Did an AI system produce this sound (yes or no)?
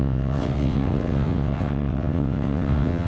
yes